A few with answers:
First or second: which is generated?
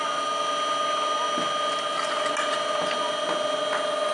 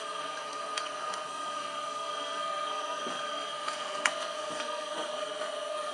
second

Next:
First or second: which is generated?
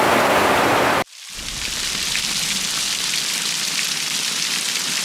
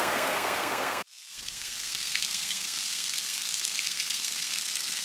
second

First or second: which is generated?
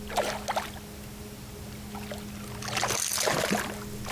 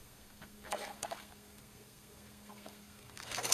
second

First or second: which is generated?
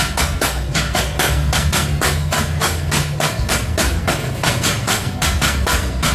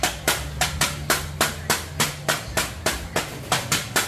first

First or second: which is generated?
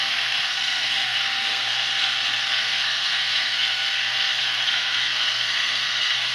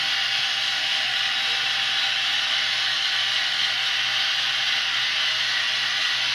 first